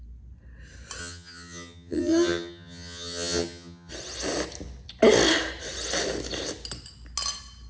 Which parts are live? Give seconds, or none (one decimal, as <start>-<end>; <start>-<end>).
0.0-1.0; 3.9-7.7